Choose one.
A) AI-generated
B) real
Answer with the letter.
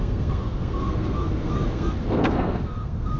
A